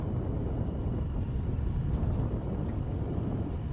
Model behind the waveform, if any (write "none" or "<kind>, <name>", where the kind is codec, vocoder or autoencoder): none